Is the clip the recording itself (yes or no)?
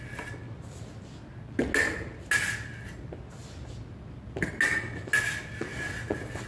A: yes